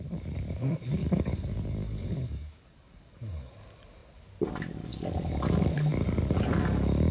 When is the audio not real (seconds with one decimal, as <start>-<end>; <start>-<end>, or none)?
1.0-3.5